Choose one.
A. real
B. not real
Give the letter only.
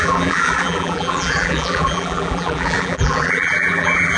B